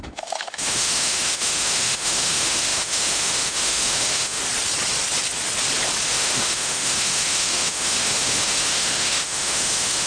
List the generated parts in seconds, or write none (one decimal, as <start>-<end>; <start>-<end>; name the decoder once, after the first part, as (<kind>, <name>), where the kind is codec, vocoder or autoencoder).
0.0-4.4 (autoencoder, DAC-VAE); 6.1-10.1